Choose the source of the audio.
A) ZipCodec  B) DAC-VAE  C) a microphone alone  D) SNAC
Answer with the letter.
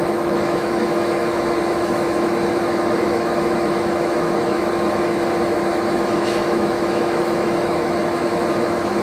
B